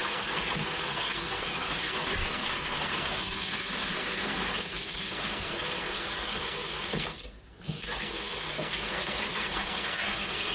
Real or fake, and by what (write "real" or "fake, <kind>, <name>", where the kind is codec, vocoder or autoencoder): fake, codec, SNAC